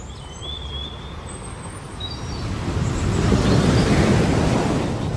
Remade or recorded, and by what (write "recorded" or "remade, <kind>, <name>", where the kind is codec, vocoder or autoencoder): recorded